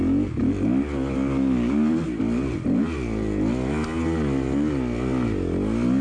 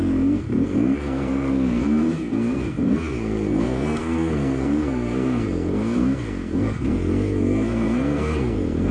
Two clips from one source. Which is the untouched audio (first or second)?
first